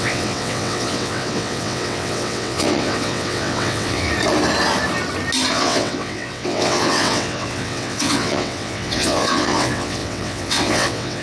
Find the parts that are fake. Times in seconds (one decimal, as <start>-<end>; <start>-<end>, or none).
0.0-4.1; 5.5-11.2